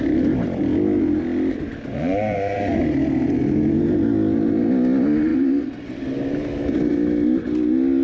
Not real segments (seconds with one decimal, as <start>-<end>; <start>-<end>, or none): 1.9-2.8